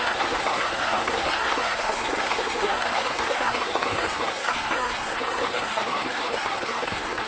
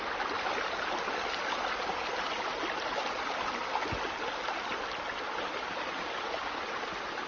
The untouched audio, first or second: second